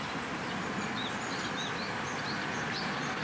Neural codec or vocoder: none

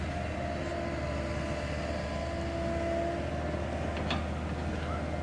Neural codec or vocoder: none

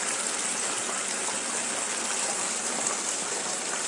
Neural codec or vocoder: none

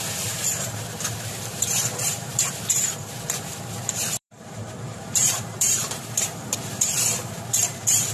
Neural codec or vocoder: vocoder, BigVGAN v2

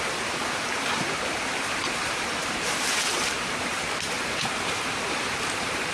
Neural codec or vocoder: vocoder, BigVGAN v2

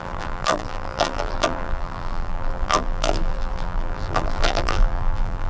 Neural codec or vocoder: vocoder, BigVGAN v2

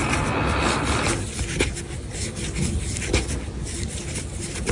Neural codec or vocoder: none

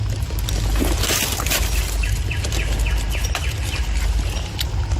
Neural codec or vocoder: none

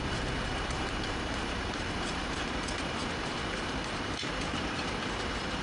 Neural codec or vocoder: vocoder, BigVGAN v2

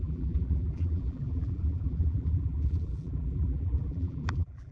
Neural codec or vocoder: vocoder, BigVGAN v2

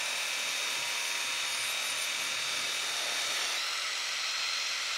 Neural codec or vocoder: none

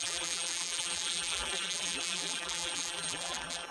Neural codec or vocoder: vocoder, BigVGAN v2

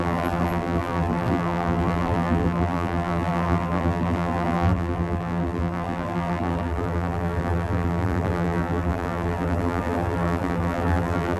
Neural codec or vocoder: vocoder, BigVGAN v2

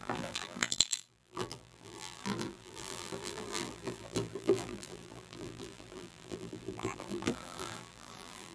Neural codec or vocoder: vocoder, BigVGAN v2